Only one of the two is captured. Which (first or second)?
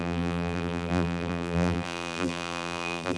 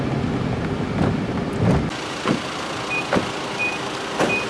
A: second